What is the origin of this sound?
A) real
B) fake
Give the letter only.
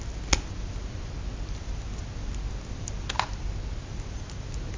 A